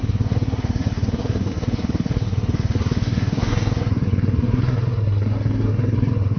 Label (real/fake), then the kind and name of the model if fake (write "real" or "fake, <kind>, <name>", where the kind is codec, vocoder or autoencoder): fake, codec, SNAC